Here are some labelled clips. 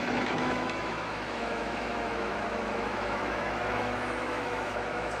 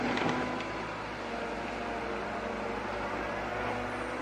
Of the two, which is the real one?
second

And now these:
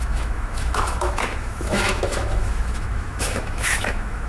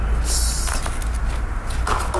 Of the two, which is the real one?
second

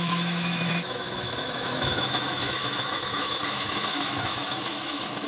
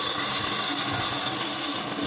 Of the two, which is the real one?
second